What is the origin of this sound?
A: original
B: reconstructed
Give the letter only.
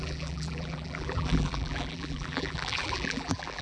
B